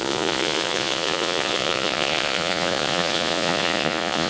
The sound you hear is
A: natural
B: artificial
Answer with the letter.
B